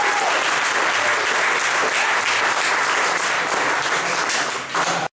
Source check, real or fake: real